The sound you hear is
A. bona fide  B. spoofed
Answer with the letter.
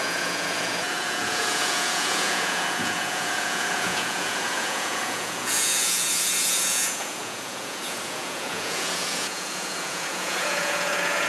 B